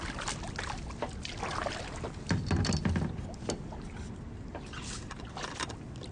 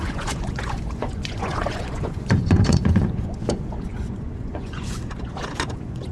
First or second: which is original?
first